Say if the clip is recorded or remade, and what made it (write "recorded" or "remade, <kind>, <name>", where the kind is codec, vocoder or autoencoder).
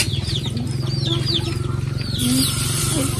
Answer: remade, vocoder, BigVGAN v2